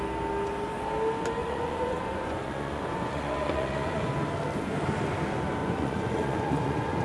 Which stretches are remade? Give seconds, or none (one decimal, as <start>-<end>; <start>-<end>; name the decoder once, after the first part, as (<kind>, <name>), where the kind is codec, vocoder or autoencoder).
1.4-4.1 (vocoder, Vocos); 5.6-7.0